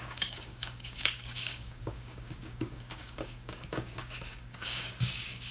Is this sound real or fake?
fake